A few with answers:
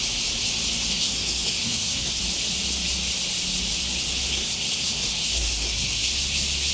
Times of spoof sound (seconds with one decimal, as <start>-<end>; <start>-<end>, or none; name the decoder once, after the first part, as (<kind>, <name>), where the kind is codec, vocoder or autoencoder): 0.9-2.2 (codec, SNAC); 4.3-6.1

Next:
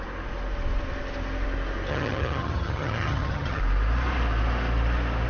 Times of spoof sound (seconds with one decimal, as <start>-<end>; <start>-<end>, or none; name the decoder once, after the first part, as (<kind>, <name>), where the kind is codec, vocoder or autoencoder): 1.9-3.6 (vocoder, HiFi-GAN)

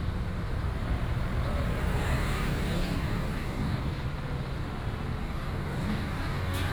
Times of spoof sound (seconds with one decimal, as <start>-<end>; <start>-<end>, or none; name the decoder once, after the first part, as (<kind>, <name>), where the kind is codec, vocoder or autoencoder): 1.8-3.8 (codec, DAC); 5.2-6.7